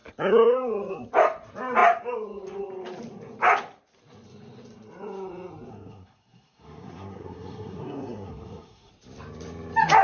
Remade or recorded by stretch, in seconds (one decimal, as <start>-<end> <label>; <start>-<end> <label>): 0.0-5.7 recorded; 5.7-8.9 remade; 8.9-10.0 recorded